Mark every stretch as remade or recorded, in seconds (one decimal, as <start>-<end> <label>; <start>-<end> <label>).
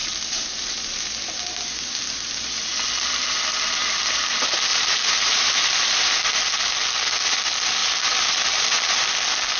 0.0-0.7 remade; 0.7-4.7 recorded; 4.7-6.3 remade; 6.3-7.8 recorded; 7.8-9.1 remade; 9.1-9.6 recorded